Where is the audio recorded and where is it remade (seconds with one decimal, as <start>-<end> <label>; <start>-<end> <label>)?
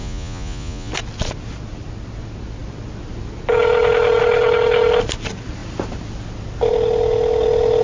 0.0-0.9 remade; 0.9-7.8 recorded